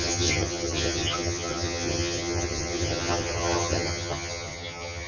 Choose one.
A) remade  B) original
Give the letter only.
A